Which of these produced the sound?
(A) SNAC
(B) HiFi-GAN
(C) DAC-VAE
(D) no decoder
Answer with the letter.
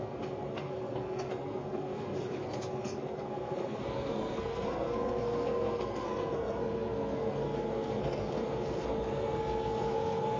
A